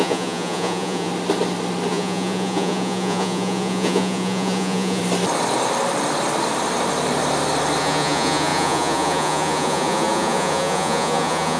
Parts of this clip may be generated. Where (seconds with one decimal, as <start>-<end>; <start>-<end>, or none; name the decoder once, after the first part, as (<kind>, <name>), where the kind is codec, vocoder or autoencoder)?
0.0-1.1 (vocoder, Vocos); 1.9-5.0; 7.8-11.6